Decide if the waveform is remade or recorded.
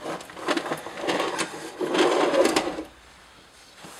recorded